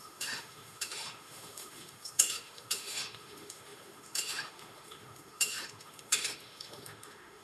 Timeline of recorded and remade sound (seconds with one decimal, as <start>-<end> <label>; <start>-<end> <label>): 0.0-7.4 remade